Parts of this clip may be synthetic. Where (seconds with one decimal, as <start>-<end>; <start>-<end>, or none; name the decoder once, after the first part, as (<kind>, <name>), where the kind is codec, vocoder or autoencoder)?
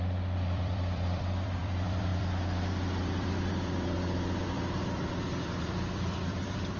0.0-6.8 (vocoder, BigVGAN v2)